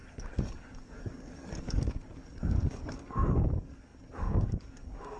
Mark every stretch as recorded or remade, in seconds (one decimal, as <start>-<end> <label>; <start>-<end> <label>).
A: 0.0-5.2 remade